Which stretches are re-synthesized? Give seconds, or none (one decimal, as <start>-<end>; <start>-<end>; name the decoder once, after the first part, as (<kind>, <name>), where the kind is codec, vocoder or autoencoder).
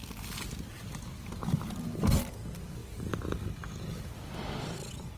none